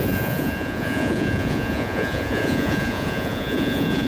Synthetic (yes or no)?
yes